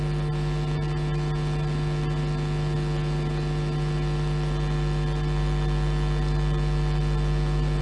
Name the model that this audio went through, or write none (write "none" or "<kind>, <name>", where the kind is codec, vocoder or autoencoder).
none